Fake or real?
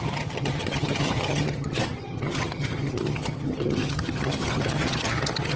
fake